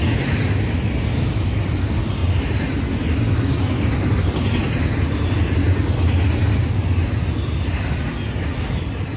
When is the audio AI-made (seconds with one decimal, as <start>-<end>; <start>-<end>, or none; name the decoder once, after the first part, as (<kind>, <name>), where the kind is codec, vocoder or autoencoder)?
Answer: none